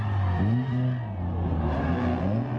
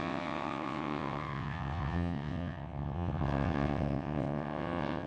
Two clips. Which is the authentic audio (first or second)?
first